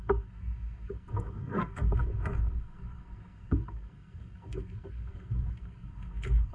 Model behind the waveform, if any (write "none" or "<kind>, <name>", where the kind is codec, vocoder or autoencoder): codec, SNAC